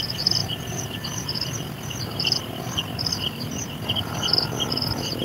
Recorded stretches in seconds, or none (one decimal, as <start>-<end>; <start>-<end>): 0.0-0.4; 3.1-5.2